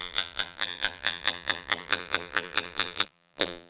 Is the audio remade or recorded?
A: remade